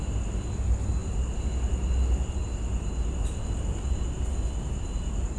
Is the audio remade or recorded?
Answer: recorded